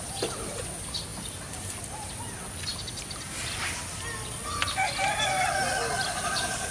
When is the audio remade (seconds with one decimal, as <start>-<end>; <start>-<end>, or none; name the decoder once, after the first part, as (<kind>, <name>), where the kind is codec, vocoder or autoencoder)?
none